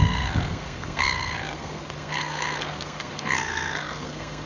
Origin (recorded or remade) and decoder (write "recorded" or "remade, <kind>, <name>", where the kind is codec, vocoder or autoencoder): remade, codec, SNAC